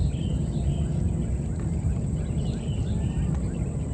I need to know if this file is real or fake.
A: real